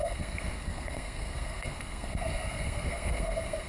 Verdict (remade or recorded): remade